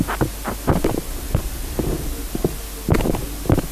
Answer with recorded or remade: recorded